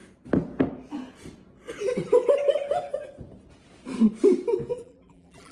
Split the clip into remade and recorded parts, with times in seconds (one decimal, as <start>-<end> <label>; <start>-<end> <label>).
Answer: 0.0-4.7 recorded; 4.7-5.5 remade